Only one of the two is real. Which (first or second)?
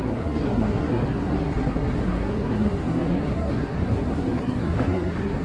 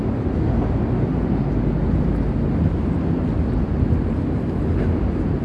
second